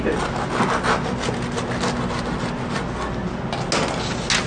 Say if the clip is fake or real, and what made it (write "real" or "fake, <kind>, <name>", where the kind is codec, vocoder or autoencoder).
real